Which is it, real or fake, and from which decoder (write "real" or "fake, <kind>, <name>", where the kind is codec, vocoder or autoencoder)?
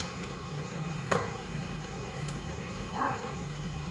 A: fake, codec, SNAC